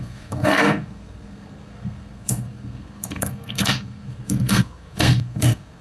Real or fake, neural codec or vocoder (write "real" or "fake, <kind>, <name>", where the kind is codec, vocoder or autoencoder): fake, codec, SNAC